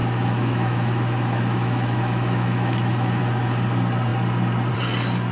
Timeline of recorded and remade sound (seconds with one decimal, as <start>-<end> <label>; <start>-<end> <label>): 0.0-3.2 remade; 3.2-5.3 recorded